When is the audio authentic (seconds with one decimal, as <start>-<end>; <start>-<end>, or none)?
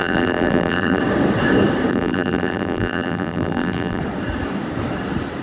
1.0-1.9; 4.0-5.4